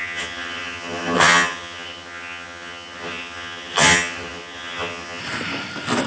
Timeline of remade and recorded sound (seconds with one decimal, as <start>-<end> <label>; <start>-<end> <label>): 0.0-5.2 remade; 5.2-6.1 recorded